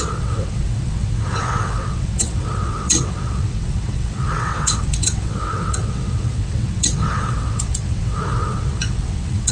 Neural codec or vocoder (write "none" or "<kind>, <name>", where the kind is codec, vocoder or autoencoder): vocoder, WaveNeXt